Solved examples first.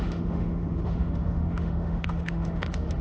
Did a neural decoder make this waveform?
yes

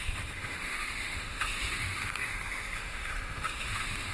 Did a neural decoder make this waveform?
yes